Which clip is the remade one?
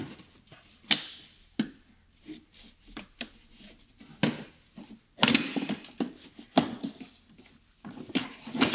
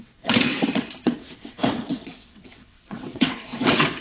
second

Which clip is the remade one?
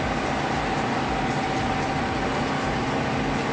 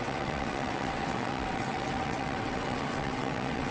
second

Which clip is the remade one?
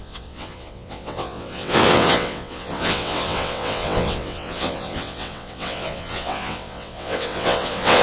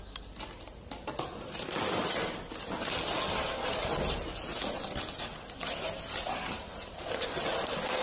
first